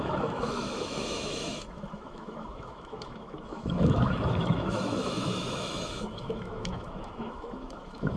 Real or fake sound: fake